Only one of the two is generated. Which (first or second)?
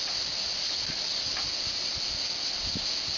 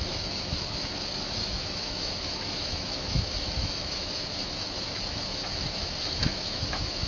second